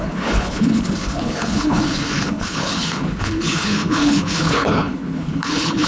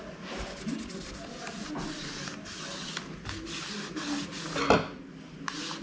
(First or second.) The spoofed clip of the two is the first